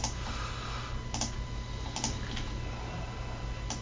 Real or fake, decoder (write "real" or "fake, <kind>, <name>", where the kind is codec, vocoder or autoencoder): real